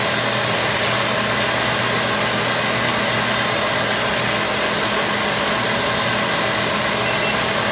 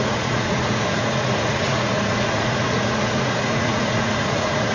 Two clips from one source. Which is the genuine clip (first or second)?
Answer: first